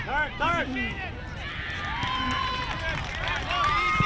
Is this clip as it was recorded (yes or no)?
yes